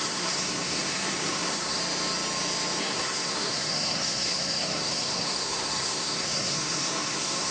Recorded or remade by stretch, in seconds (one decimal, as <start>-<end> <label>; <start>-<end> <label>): 0.0-1.8 remade; 1.8-2.8 recorded; 2.8-7.5 remade